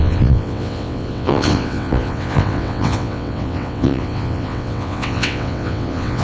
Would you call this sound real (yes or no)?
no